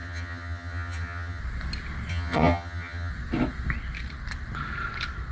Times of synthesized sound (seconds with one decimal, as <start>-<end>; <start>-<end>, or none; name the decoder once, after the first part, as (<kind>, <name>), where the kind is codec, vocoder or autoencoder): 0.0-1.4 (vocoder, HiFi-GAN); 2.1-3.1